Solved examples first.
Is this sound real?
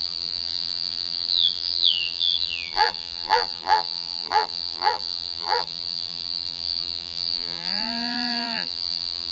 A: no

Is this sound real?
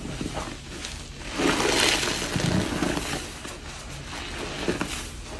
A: yes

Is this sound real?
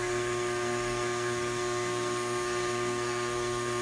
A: no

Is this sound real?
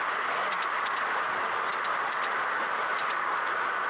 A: yes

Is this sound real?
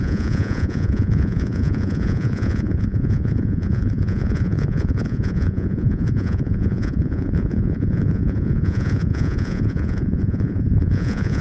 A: no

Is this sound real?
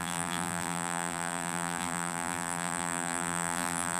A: no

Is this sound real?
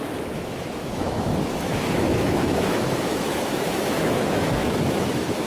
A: no